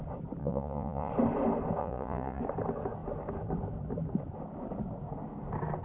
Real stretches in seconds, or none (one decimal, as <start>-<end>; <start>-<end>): 0.0-0.4; 1.1-1.8; 2.4-5.8